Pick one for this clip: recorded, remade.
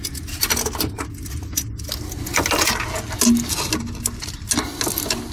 recorded